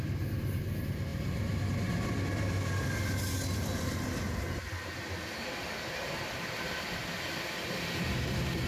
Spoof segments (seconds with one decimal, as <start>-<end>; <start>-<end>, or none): none